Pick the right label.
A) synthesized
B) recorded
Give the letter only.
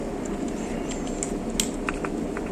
B